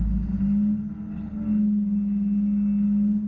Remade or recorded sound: recorded